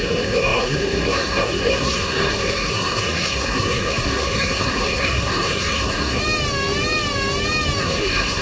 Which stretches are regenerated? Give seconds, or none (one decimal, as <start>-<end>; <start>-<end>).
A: 0.0-6.2; 7.8-8.4